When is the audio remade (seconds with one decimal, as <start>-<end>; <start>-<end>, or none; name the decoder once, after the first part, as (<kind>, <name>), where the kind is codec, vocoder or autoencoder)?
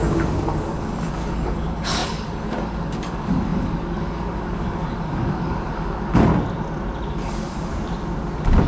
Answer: 0.0-6.3 (codec, DAC); 7.1-7.7